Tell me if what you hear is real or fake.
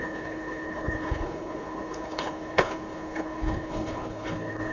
fake